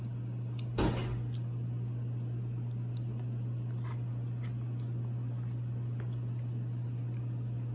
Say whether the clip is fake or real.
real